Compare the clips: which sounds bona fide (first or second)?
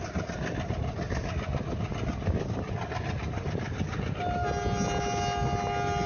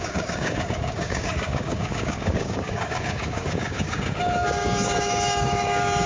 first